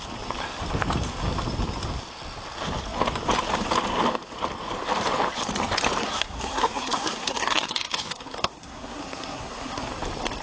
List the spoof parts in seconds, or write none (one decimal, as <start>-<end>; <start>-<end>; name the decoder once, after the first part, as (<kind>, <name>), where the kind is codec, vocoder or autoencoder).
6.0-9.9 (codec, SNAC)